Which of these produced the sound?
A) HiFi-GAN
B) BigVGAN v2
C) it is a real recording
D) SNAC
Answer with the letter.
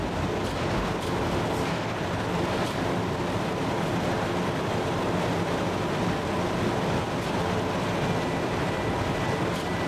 C